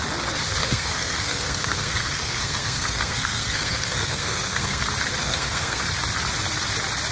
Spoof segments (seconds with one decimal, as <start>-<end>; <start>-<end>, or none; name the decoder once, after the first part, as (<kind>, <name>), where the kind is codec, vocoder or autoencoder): 0.6-4.8 (codec, SNAC); 5.2-5.8